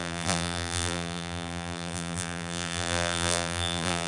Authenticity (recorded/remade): remade